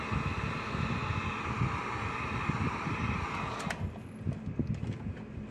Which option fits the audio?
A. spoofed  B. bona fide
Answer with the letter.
B